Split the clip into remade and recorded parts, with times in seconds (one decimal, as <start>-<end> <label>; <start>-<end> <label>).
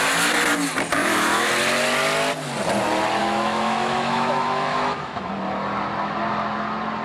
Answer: 0.0-1.0 recorded; 1.0-1.5 remade; 1.5-3.2 recorded; 3.2-5.3 remade; 5.3-7.0 recorded